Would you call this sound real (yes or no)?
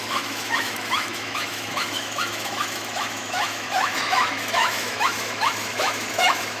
no